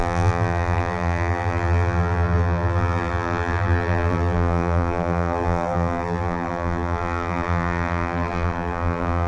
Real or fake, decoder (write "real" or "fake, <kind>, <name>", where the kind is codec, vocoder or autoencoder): fake, vocoder, BigVGAN v2